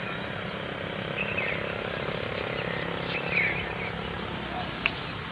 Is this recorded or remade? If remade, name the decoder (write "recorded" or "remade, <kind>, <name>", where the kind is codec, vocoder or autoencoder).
recorded